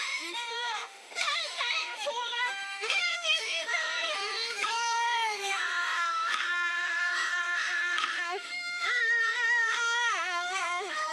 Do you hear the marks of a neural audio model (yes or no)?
yes